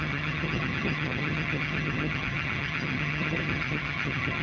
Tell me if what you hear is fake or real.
fake